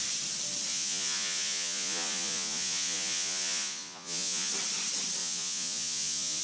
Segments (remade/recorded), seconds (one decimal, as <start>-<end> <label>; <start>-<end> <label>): 0.0-0.7 recorded; 0.7-4.5 remade; 4.5-5.2 recorded; 5.2-6.4 remade